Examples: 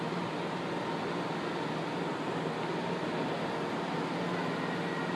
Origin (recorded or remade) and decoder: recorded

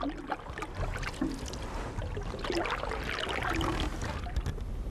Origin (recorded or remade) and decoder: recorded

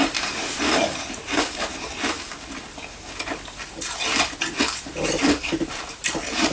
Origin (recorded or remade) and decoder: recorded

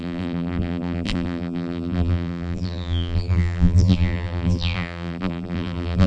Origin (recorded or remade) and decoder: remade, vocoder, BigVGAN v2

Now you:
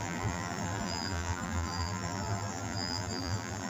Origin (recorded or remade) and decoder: remade, vocoder, BigVGAN v2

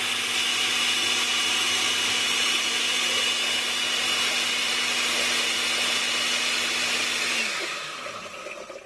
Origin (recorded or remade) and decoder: recorded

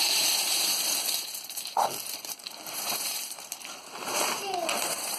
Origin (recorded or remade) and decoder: remade, vocoder, BigVGAN v2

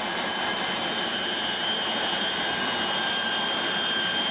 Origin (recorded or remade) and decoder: remade, vocoder, BigVGAN v2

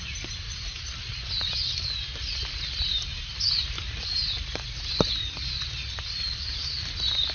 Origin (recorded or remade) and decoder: recorded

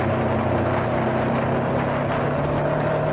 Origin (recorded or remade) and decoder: recorded